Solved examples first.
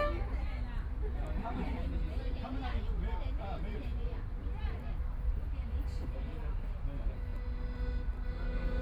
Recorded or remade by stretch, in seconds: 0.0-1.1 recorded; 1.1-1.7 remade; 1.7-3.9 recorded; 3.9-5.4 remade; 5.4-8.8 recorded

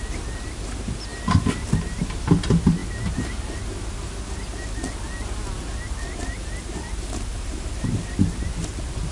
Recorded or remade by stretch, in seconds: 0.0-9.1 recorded

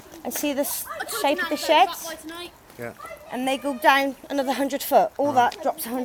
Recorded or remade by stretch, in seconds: 0.0-6.0 recorded

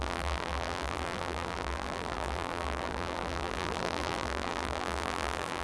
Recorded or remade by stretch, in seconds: 0.0-5.6 remade